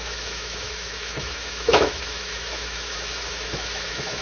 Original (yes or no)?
no